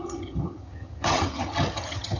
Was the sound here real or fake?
fake